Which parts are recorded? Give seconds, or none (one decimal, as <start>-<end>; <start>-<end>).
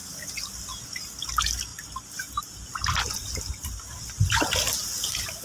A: 0.0-5.4